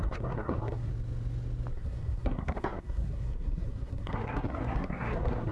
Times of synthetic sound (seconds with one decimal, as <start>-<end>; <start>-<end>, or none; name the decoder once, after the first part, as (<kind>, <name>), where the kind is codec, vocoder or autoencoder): 0.0-0.9 (codec, SNAC); 1.7-5.5

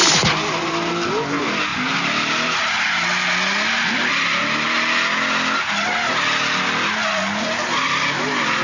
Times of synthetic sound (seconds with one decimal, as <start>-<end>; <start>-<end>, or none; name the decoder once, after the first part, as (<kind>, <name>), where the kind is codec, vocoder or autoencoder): none

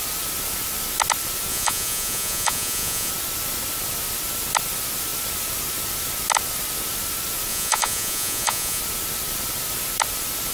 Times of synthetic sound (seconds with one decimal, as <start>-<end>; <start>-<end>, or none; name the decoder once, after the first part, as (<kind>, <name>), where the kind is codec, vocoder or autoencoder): 1.5-3.1 (vocoder, Vocos); 7.5-8.8

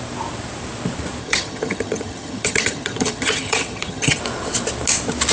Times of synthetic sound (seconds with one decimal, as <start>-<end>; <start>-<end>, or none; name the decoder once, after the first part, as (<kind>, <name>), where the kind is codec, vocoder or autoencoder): 1.2-4.2 (vocoder, HiFi-GAN)

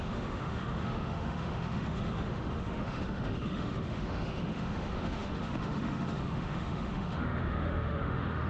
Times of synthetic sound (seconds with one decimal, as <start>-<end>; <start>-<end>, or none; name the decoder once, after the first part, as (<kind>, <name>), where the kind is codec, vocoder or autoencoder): 0.0-8.5 (autoencoder, DAC-VAE)

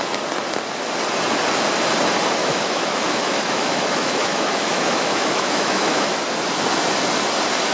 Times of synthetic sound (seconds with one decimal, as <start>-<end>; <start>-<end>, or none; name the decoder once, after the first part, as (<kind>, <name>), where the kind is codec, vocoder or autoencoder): 2.4-6.2 (autoencoder, DAC-VAE)